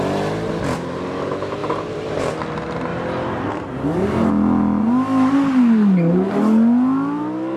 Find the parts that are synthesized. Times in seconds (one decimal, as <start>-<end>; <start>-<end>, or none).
1.6-2.2; 2.9-4.3